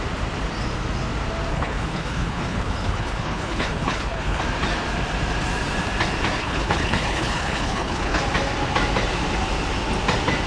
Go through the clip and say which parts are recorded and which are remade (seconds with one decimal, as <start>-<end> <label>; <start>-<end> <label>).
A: 0.0-1.5 recorded; 1.5-4.4 remade; 4.4-6.4 recorded; 6.4-8.2 remade; 8.2-10.5 recorded